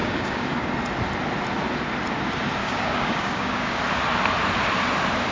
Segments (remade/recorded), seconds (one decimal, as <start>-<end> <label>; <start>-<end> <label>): 0.0-0.7 remade; 0.7-2.6 recorded; 2.6-3.8 remade; 3.8-5.3 recorded